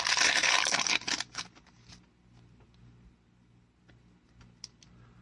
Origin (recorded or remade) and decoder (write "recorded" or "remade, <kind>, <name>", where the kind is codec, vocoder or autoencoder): recorded